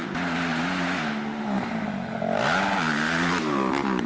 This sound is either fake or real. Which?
real